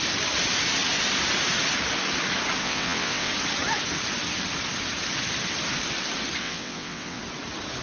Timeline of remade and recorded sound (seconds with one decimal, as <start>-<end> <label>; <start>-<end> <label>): 0.0-2.6 recorded; 2.6-3.3 remade; 3.3-6.4 recorded; 6.4-7.2 remade; 7.2-7.8 recorded